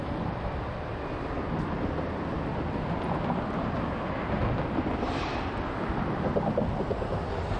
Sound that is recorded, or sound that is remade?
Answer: recorded